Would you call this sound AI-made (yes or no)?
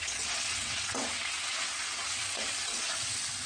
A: yes